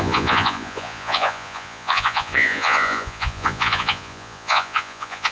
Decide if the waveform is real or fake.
fake